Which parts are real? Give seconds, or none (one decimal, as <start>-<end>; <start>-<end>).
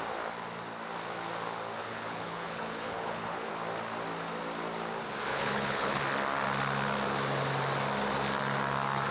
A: 0.0-1.8; 3.5-5.3; 6.0-9.1